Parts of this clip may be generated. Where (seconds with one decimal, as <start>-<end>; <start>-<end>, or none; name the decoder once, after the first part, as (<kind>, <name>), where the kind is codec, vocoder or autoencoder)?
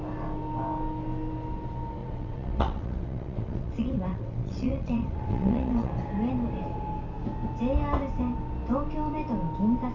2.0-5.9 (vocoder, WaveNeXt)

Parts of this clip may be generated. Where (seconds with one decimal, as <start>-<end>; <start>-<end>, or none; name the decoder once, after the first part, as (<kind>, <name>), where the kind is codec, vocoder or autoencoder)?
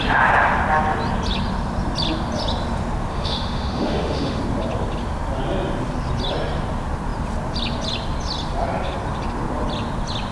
3.1-4.4 (autoencoder, DAC-VAE)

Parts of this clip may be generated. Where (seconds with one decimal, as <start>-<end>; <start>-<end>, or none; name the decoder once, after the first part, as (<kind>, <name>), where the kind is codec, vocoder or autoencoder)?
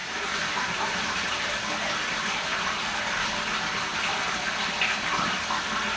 0.0-1.5 (vocoder, BigVGAN v2)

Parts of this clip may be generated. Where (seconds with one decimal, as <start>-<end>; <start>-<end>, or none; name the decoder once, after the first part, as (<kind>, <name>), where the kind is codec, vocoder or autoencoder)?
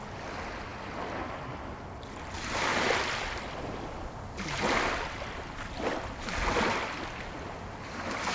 none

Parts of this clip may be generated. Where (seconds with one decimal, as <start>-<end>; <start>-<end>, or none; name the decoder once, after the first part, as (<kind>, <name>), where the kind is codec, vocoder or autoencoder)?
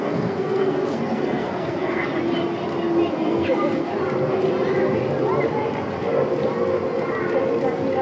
0.0-2.1 (codec, SNAC); 3.1-3.9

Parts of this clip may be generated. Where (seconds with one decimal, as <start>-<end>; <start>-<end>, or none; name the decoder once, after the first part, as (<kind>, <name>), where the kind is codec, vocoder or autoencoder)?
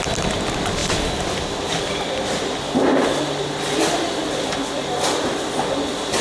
0.8-4.5 (vocoder, BigVGAN v2)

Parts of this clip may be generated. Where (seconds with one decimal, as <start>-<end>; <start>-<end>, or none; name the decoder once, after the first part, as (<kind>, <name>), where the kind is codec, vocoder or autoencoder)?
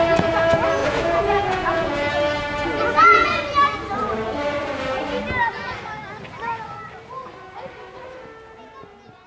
0.8-2.1 (vocoder, Vocos); 2.9-3.4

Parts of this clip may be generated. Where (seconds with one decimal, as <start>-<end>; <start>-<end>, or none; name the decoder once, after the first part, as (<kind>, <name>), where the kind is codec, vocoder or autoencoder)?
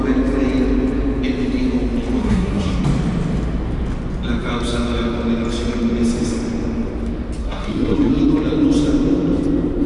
2.2-2.8 (codec, SNAC); 7.4-8.1